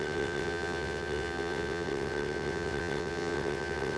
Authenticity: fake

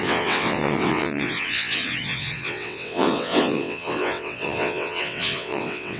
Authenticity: fake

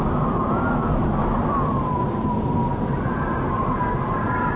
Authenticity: real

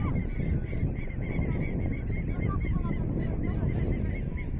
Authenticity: real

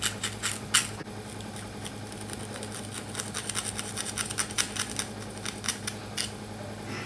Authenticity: real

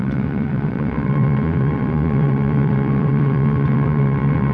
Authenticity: fake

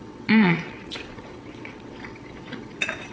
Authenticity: fake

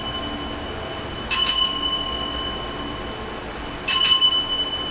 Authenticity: real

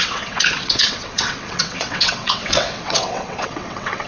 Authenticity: fake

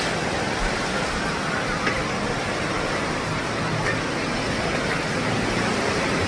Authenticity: real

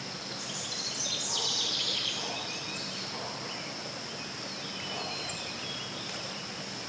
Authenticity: real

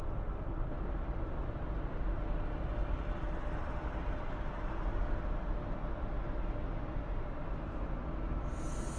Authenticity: real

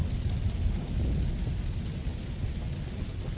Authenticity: real